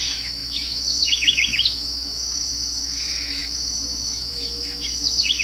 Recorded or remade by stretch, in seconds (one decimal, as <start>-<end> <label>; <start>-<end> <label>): 0.0-5.4 remade